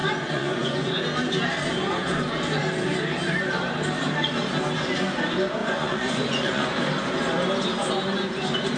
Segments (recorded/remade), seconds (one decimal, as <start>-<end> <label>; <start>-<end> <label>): 0.0-1.0 remade; 1.0-5.6 recorded; 5.6-6.7 remade; 6.7-8.8 recorded